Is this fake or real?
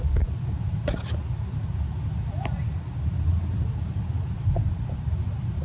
real